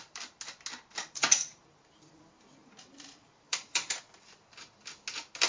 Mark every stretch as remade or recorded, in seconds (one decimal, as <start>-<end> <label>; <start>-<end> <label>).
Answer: 0.0-1.0 recorded; 1.0-2.1 remade; 2.1-2.6 recorded; 2.6-4.0 remade; 4.0-5.5 recorded